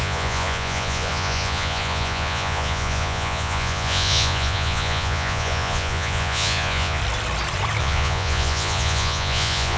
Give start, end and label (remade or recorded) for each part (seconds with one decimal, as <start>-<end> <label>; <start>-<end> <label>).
0.0-7.0 remade; 7.0-7.8 recorded; 7.8-9.8 remade